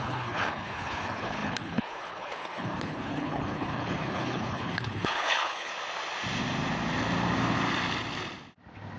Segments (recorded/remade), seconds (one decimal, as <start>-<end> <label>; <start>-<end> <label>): 0.0-5.7 remade; 5.7-9.0 recorded